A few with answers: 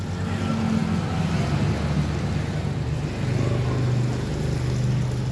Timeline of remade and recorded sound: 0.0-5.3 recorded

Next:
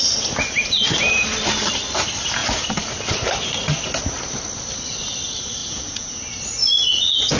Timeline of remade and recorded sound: 0.0-5.6 recorded; 5.6-6.2 remade; 6.2-7.4 recorded

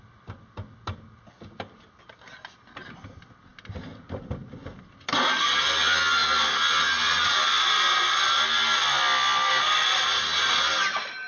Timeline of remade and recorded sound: 0.0-11.3 recorded